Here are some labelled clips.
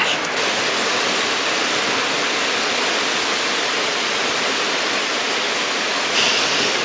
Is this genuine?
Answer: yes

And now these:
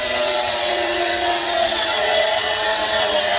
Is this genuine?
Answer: no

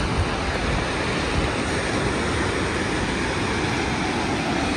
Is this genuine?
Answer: yes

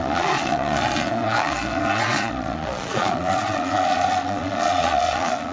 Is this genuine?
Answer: no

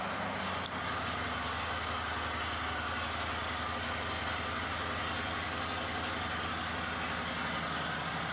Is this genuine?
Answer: yes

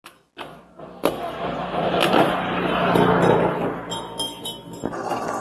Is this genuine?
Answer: yes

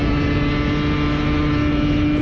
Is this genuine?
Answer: yes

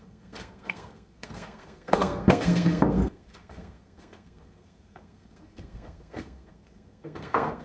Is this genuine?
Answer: no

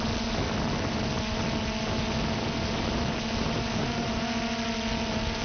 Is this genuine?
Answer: yes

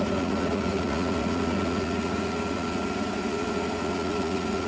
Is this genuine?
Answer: no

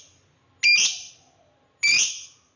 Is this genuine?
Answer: yes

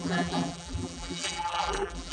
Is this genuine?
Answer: no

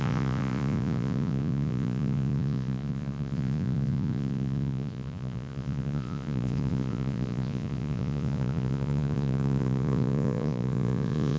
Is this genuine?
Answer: no